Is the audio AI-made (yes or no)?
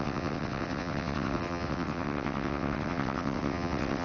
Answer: yes